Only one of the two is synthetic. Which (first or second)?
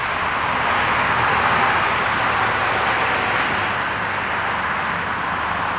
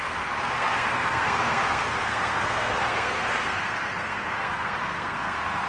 second